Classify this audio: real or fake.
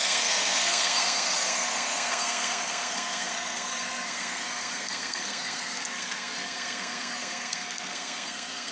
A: fake